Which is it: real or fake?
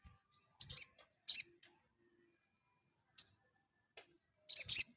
real